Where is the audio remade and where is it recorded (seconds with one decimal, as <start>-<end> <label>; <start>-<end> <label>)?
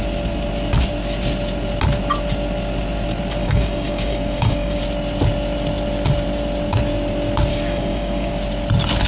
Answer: 0.0-3.4 recorded; 3.4-4.8 remade; 4.8-7.5 recorded; 7.5-8.3 remade; 8.3-9.1 recorded